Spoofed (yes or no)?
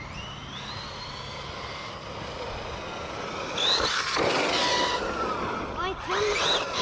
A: no